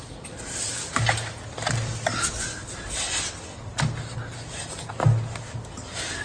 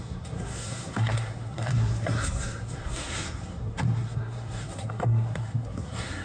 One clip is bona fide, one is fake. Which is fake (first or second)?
second